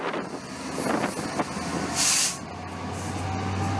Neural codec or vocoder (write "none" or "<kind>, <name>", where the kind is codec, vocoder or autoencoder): none